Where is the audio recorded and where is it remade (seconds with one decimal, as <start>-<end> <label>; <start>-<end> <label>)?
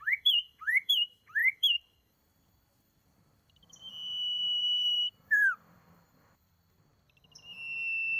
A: 0.0-6.9 remade; 6.9-8.2 recorded